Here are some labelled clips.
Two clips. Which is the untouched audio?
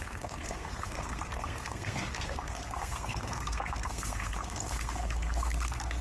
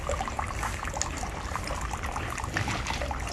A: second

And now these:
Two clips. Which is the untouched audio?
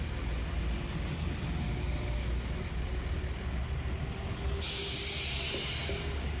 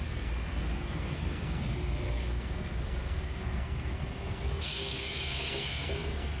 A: first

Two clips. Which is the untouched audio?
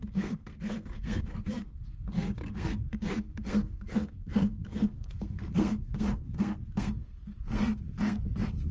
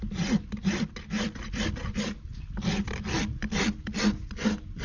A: second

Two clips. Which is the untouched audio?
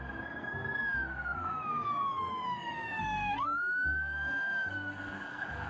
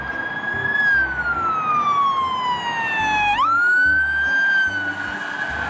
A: second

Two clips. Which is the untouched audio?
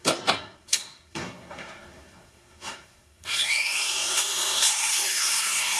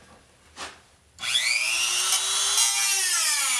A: second